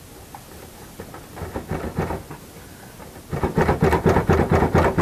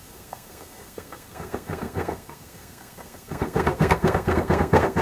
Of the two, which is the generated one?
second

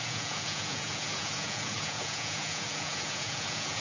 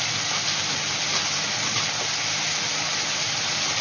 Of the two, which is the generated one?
first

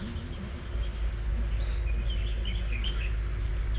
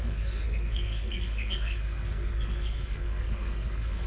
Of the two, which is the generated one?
second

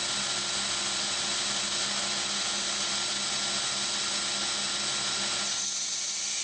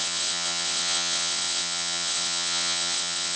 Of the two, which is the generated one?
second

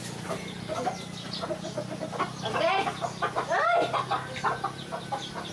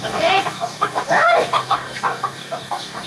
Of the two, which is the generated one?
second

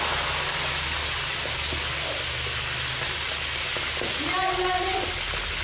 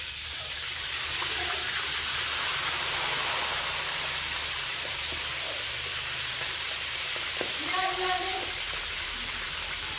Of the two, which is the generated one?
second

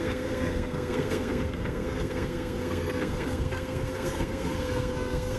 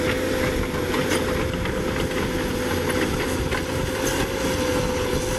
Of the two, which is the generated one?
first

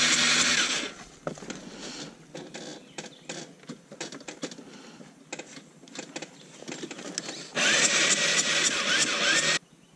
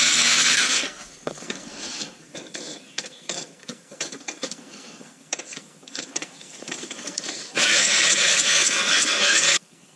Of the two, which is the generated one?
second